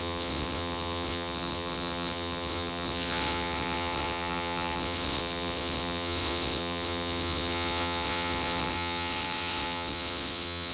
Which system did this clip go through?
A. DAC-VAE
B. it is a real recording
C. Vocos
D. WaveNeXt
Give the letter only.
D